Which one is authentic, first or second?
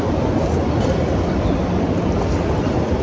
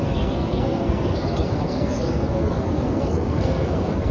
first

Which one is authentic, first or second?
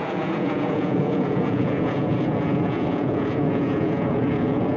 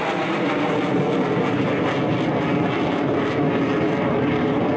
second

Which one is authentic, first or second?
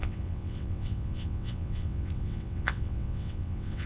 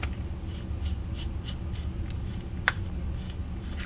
second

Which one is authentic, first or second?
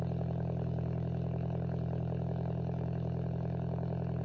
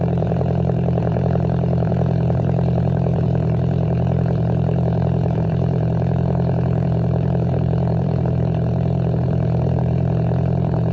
first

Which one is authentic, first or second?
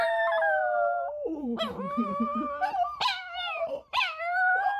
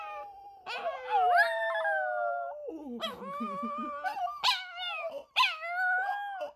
second